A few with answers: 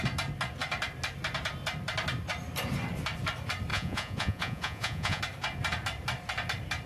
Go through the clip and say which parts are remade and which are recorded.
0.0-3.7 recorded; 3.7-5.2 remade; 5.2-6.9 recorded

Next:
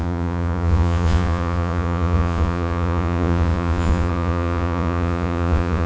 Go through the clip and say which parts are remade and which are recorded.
0.0-5.9 remade

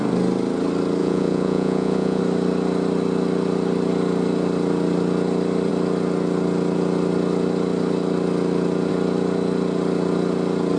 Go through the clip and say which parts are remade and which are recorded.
0.0-1.0 recorded; 1.0-2.2 remade; 2.2-10.8 recorded

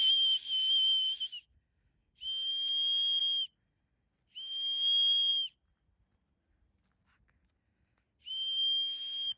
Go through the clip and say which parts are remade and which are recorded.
0.0-9.4 recorded

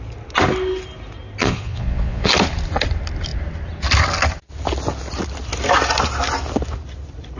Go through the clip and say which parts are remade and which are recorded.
0.0-1.4 recorded; 1.4-2.3 remade; 2.3-7.4 recorded

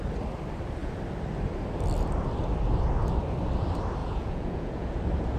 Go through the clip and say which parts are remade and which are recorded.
0.0-4.0 recorded; 4.0-5.0 remade; 5.0-5.4 recorded

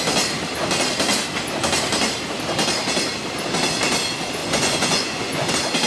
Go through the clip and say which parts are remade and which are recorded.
0.0-4.4 recorded; 4.4-5.5 remade; 5.5-5.9 recorded